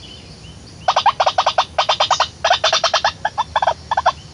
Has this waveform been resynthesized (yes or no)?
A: no